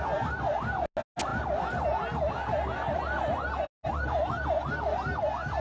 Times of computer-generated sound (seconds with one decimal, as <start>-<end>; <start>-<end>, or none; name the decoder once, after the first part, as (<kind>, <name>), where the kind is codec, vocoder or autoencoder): 3.9-4.5 (vocoder, BigVGAN v2)